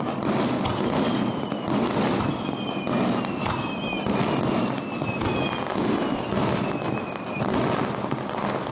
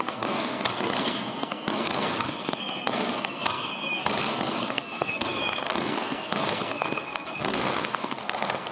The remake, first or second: second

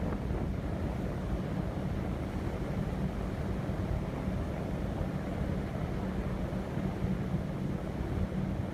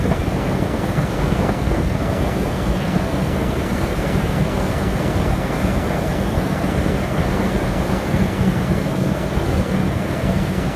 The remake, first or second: second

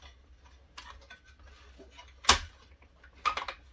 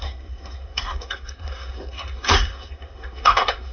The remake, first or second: second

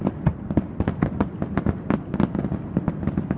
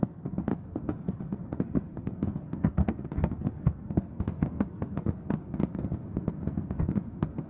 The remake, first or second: second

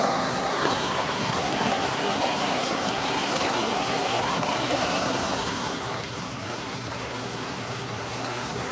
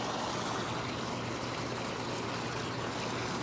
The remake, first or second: first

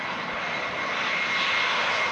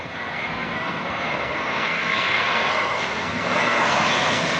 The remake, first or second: second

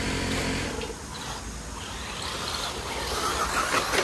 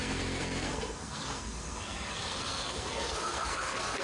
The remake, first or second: second